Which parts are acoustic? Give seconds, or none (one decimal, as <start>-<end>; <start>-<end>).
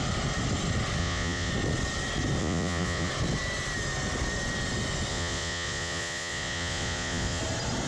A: 0.0-1.0; 1.5-2.4; 3.1-5.1; 7.4-7.9